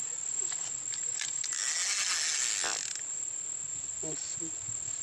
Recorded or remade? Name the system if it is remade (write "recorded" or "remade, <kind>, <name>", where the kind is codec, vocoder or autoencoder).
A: recorded